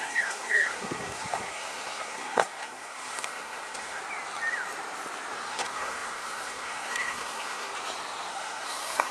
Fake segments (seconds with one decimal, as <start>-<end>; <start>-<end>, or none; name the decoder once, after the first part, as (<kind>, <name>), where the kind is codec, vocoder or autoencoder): 0.0-4.0 (codec, SNAC); 5.5-7.7; 8.3-9.1